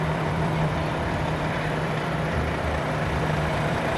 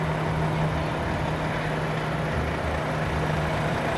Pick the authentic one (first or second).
second